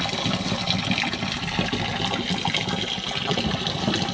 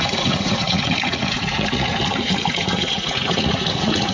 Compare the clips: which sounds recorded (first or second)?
first